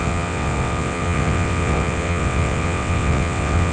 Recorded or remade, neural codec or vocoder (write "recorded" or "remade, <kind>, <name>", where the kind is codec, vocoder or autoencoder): remade, vocoder, WaveNeXt